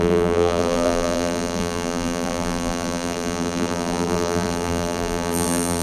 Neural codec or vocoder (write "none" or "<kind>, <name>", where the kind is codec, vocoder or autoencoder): vocoder, BigVGAN v2